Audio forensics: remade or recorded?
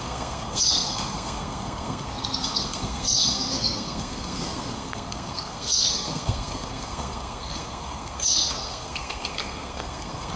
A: remade